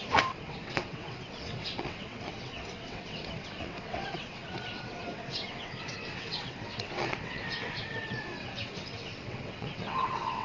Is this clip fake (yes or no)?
yes